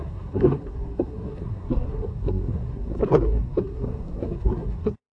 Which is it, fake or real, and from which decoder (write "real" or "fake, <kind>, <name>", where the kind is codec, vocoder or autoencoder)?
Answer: fake, codec, SNAC